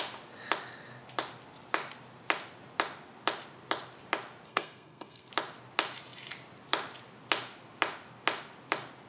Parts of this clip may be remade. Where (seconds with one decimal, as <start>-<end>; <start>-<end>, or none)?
4.5-5.3